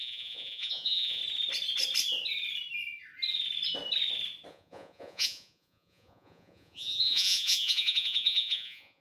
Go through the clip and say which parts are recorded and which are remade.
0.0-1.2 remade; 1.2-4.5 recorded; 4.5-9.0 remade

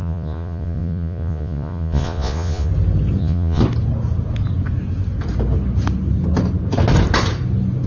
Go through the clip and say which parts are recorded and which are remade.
0.0-2.7 remade; 2.7-3.2 recorded; 3.2-3.6 remade; 3.6-7.9 recorded

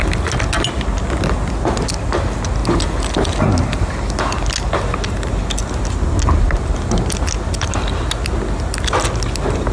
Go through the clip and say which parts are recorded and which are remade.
0.0-9.7 recorded